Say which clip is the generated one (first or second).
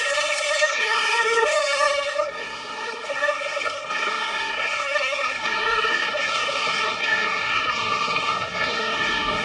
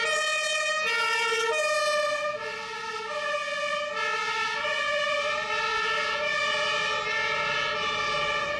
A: first